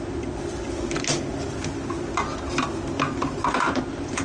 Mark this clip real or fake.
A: real